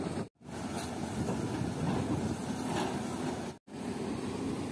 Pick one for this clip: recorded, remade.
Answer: recorded